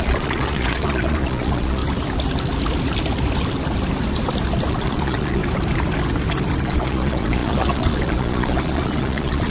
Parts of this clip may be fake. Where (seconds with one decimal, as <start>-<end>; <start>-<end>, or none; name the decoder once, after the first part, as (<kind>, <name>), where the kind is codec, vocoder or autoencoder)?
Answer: 0.0-1.8 (vocoder, Vocos); 4.7-5.4; 6.6-9.5